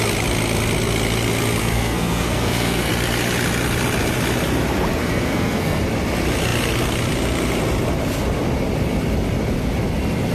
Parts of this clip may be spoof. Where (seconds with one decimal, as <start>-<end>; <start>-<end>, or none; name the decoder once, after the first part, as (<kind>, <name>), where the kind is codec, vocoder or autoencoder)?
1.6-2.9 (codec, SNAC); 5.0-5.8

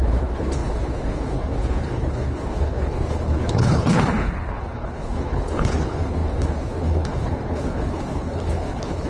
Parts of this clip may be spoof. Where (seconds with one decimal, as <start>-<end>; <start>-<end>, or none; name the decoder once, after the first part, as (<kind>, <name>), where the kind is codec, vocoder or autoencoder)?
0.0-9.1 (codec, HILCodec)

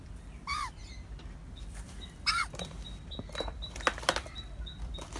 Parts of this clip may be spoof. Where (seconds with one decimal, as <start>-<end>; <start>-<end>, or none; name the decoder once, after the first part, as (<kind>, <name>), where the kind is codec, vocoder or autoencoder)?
none

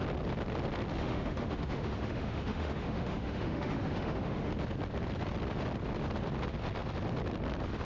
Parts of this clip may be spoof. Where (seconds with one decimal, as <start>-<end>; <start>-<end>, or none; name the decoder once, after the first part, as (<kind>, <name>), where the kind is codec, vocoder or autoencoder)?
1.0-4.5 (autoencoder, DAC-VAE)

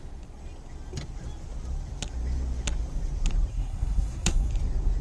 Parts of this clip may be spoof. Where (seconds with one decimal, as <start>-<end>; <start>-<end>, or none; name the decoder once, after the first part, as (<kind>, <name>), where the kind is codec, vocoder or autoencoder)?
3.5-4.5 (codec, SNAC)